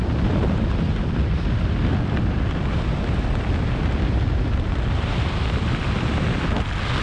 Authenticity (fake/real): real